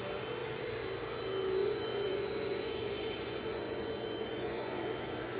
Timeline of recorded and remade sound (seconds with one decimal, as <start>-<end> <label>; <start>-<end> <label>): 0.0-1.6 recorded; 1.6-4.8 remade; 4.8-5.4 recorded